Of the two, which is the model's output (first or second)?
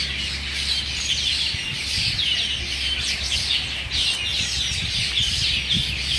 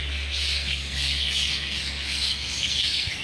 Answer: second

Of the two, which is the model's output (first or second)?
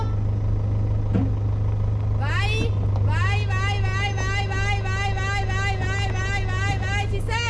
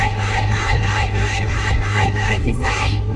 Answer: second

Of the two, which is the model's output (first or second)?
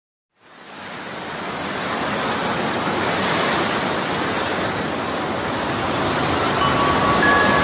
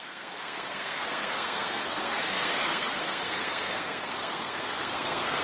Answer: second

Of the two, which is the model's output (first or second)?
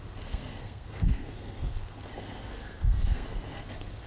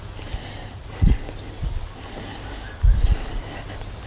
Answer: first